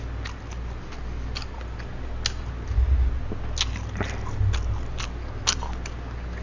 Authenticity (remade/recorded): recorded